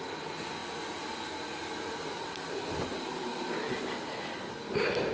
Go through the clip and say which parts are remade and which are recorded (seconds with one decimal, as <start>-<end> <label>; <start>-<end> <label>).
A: 0.0-5.1 recorded